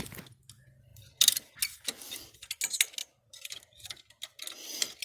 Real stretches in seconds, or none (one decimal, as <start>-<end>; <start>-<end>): 0.0-0.9; 1.6-3.0; 4.1-5.0